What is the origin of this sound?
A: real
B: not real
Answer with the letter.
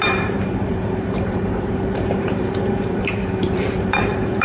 B